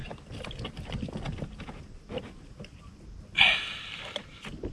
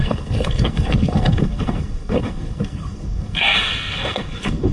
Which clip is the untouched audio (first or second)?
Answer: first